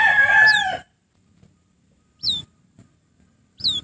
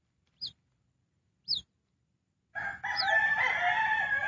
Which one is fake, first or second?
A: first